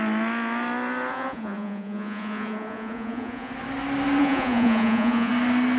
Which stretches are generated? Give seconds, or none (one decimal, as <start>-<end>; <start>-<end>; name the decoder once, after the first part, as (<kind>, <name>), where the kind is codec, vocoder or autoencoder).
1.1-3.5 (vocoder, Vocos); 4.2-5.3